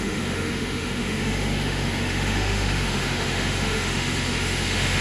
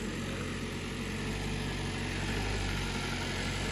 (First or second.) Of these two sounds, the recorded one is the second